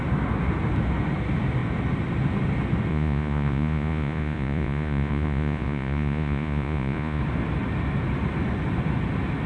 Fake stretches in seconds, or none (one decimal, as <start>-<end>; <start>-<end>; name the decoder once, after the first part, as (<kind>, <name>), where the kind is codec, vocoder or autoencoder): 2.9-7.2 (vocoder, Vocos)